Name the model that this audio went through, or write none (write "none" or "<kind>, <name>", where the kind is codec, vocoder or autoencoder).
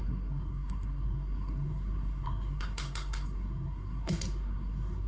codec, SNAC